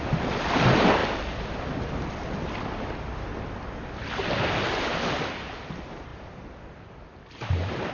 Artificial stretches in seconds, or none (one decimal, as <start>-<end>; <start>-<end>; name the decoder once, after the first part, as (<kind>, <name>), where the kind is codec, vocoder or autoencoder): none